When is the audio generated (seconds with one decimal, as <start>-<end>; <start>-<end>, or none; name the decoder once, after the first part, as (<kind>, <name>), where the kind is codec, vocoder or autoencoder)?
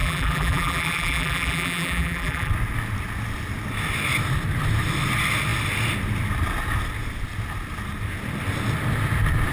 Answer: 0.0-2.5 (vocoder, BigVGAN v2)